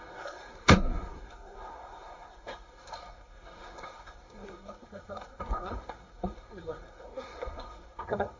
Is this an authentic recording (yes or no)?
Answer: no